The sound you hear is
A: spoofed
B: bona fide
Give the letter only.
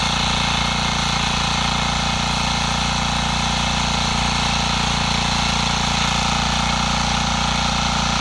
B